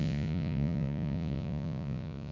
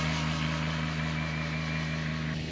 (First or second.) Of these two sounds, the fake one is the first